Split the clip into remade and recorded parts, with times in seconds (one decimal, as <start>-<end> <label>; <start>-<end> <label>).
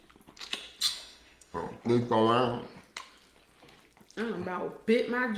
0.0-0.9 recorded; 0.9-1.7 remade; 1.7-5.4 recorded